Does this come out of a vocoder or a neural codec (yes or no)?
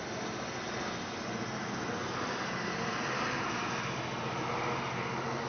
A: no